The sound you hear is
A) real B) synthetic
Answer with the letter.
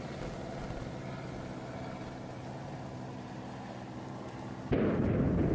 A